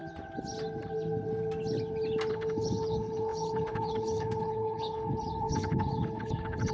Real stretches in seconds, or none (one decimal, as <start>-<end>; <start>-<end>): 0.0-2.3